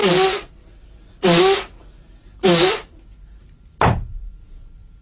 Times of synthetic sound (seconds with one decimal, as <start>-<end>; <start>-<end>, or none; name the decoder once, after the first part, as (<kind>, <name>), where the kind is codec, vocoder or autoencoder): none